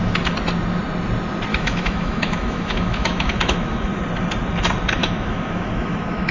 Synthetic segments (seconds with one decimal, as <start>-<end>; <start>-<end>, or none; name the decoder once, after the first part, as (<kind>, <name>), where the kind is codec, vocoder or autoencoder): 1.5-3.9 (autoencoder, DAC-VAE); 5.0-6.3